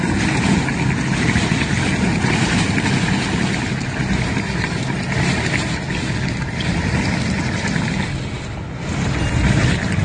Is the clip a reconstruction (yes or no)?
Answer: no